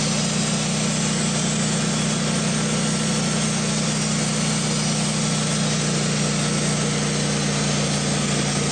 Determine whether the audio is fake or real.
real